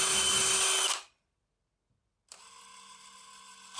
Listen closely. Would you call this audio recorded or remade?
recorded